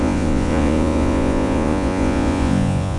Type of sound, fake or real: fake